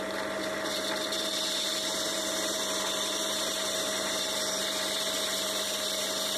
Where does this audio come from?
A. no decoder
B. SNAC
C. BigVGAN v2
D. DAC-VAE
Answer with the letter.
C